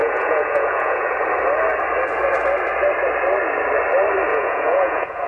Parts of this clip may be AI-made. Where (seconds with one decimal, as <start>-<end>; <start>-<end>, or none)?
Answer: 0.0-1.1; 4.3-5.3